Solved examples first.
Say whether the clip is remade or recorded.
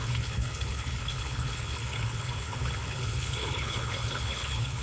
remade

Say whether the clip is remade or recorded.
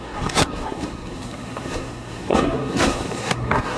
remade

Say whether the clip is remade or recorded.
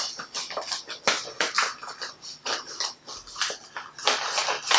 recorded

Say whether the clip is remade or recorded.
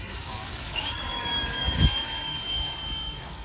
remade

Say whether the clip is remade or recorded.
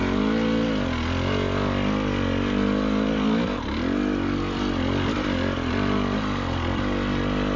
recorded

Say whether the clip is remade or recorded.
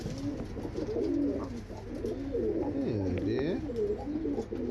recorded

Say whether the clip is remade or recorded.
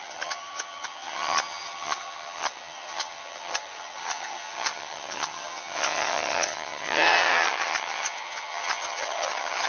remade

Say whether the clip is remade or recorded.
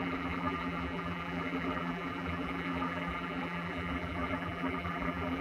remade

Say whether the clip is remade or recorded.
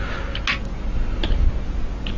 recorded